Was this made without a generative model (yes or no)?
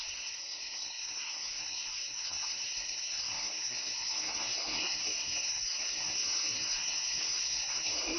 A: no